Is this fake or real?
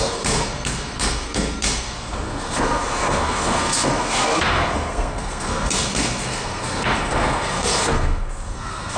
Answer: fake